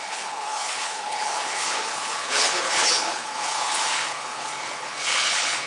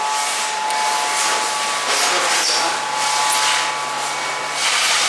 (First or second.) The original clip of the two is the second